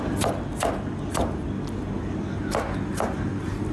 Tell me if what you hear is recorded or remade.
recorded